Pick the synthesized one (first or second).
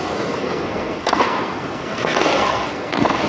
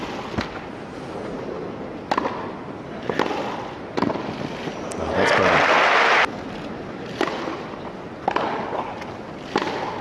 first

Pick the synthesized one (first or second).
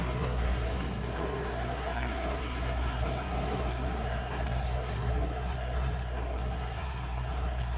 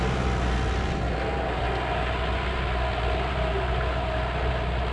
first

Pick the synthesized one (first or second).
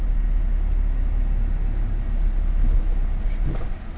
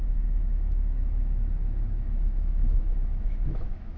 second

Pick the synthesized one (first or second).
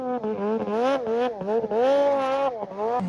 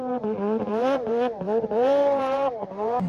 second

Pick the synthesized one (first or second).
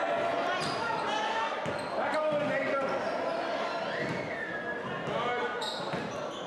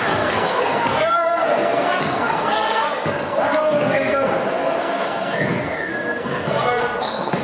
second